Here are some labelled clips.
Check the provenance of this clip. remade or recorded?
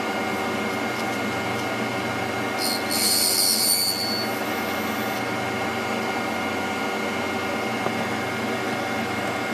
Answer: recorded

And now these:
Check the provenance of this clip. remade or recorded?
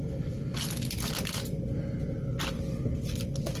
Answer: recorded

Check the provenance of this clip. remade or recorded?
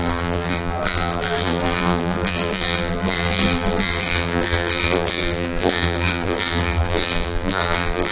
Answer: remade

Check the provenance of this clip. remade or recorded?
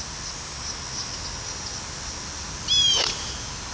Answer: recorded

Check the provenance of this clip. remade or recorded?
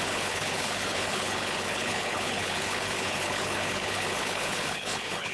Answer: remade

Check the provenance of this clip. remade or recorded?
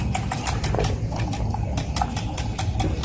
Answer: recorded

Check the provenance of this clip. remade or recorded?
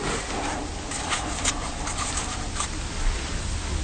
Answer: recorded